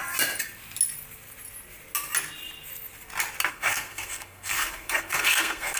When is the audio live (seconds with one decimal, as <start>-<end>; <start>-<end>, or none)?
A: 0.0-3.5